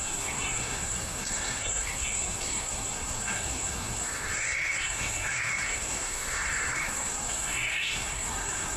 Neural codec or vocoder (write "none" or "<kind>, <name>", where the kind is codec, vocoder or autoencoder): codec, SNAC